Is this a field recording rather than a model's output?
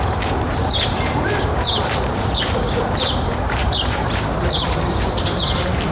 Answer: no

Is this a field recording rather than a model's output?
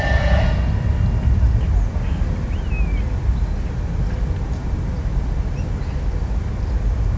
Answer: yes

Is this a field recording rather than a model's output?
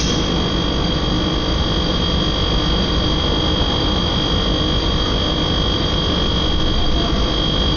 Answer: yes